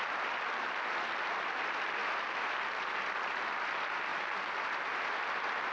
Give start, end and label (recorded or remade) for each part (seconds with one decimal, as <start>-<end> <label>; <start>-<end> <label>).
0.0-5.7 recorded